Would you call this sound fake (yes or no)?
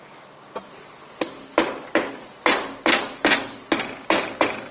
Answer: no